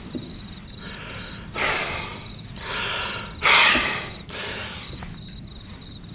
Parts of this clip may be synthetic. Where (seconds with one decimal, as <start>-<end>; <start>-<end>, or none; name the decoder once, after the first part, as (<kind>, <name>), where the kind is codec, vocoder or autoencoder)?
none

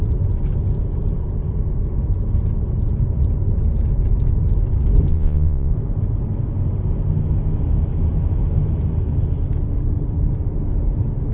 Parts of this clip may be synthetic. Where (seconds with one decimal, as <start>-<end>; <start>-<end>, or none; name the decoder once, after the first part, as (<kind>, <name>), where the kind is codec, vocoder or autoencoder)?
5.1-5.7 (vocoder, Vocos)